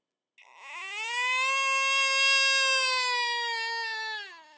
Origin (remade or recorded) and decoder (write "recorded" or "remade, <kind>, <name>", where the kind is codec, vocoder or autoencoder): recorded